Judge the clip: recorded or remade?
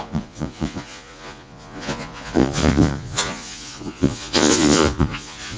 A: remade